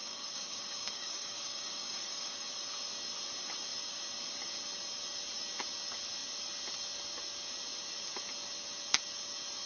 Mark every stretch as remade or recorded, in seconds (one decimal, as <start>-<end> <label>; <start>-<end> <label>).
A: 0.0-2.5 remade; 2.5-9.7 recorded